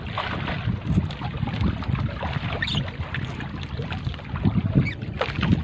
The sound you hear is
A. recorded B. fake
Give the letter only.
A